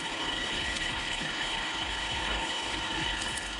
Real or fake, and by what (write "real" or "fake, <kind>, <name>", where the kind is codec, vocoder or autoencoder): fake, codec, HILCodec